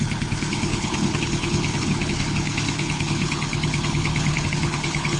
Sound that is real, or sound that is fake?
fake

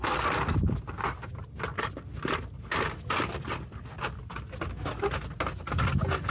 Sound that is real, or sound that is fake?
real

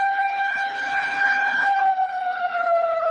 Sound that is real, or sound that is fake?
fake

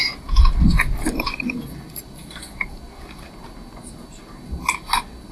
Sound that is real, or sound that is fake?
real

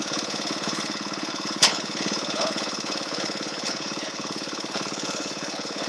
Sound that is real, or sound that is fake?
fake